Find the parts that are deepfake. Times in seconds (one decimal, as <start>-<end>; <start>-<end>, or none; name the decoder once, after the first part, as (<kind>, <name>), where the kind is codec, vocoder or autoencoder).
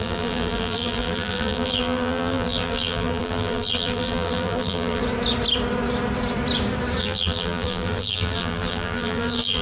0.0-5.0 (vocoder, BigVGAN v2); 7.0-9.6